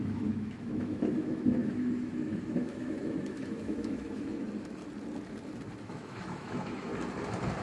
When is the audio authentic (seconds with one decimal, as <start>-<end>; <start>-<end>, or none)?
4.8-5.8; 6.9-7.6